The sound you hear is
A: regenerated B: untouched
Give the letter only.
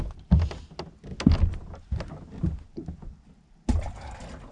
B